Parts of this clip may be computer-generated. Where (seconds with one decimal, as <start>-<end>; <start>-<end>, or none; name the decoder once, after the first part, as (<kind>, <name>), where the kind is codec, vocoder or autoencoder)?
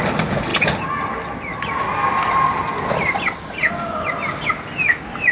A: none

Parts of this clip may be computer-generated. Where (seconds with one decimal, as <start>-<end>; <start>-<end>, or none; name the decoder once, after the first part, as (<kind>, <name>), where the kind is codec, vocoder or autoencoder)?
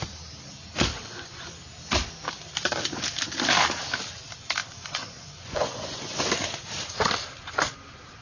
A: 0.9-1.5 (vocoder, Vocos); 4.6-6.3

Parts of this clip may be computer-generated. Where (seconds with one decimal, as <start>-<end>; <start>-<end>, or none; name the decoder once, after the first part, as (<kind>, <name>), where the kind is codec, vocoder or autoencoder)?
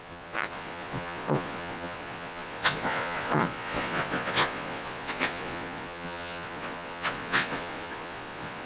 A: 0.0-8.7 (vocoder, Vocos)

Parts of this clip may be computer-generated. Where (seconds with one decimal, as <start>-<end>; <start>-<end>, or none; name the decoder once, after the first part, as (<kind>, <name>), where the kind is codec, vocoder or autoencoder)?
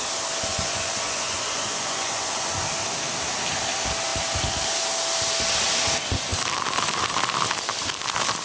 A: 0.5-2.5 (vocoder, Vocos)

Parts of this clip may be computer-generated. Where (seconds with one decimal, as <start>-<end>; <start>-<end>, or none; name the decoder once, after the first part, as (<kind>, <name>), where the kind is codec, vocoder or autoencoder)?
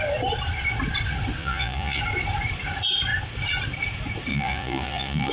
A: 1.4-2.0 (vocoder, Vocos); 4.3-5.3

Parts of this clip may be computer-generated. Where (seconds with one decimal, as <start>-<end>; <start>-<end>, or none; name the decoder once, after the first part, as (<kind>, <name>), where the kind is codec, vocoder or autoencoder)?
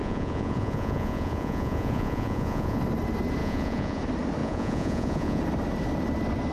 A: 0.0-2.8 (vocoder, Vocos); 3.4-4.0; 4.4-5.4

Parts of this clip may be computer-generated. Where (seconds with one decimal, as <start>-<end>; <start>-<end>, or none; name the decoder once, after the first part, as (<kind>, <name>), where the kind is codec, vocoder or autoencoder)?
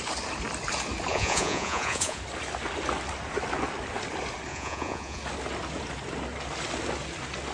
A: 1.1-2.2 (vocoder, Vocos); 4.5-5.2